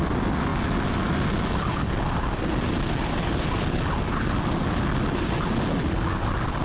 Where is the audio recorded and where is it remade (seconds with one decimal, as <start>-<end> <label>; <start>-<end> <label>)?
0.0-6.6 recorded